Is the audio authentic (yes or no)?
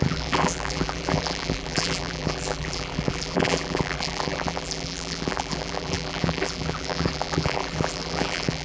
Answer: no